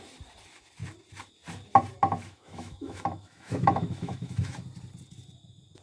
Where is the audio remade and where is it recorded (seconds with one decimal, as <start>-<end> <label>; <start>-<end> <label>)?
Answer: 0.0-2.2 recorded; 2.2-4.5 remade; 4.5-5.8 recorded